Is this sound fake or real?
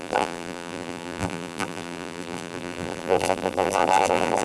fake